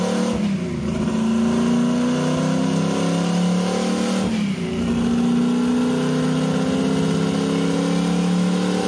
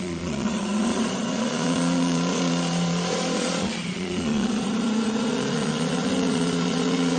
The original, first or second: first